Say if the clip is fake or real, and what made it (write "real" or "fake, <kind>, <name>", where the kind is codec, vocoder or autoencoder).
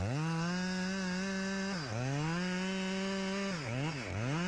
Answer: real